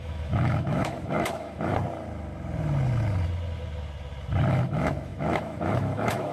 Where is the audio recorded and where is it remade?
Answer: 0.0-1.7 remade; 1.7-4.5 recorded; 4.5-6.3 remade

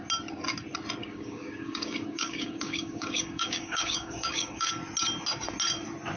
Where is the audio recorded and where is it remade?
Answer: 0.0-1.0 recorded; 1.0-4.7 remade; 4.7-6.2 recorded

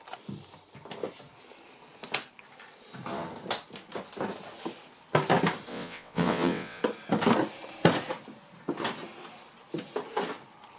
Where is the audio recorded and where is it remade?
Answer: 0.0-5.7 recorded; 5.7-6.8 remade; 6.8-10.8 recorded

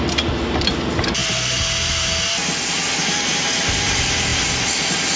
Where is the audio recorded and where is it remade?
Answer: 0.0-5.2 recorded

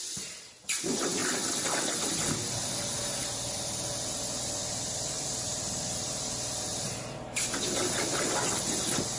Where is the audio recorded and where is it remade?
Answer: 0.0-3.2 recorded; 3.2-7.0 remade; 7.0-9.2 recorded

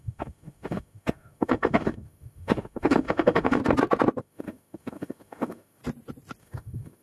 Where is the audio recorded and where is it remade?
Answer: 0.0-3.6 remade; 3.6-4.2 recorded; 4.2-5.8 remade; 5.8-6.4 recorded; 6.4-7.0 remade

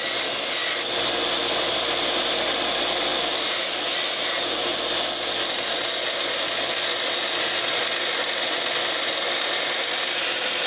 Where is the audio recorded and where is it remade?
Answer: 0.0-3.1 recorded; 3.1-5.3 remade; 5.3-10.7 recorded

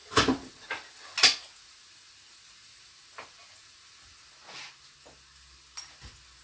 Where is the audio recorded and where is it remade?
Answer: 0.0-6.4 recorded